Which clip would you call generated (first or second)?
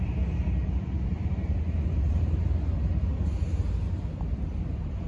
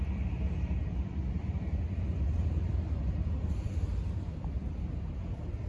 second